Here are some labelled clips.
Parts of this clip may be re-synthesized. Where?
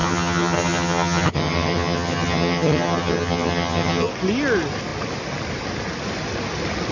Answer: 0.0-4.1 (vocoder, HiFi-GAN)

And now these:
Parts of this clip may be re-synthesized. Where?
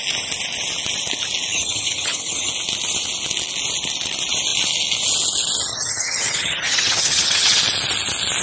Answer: 1.5-2.5 (vocoder, HiFi-GAN); 5.7-7.6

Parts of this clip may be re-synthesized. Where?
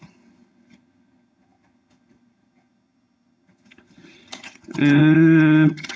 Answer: 0.0-6.0 (vocoder, HiFi-GAN)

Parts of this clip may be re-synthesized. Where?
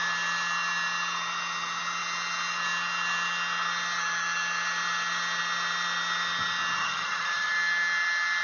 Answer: 6.8-7.5 (vocoder, HiFi-GAN)